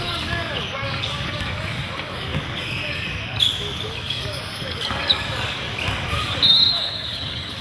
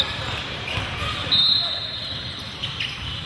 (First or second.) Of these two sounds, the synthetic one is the first